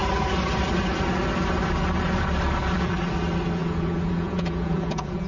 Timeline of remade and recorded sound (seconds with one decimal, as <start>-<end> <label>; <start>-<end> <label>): 0.0-3.6 recorded; 3.6-5.3 remade